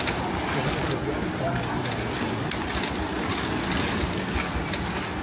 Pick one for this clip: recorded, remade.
recorded